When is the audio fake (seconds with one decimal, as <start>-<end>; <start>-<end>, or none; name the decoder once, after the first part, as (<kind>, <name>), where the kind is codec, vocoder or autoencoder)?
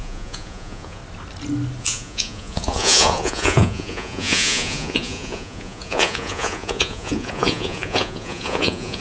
0.0-1.0 (vocoder, Vocos); 1.8-9.0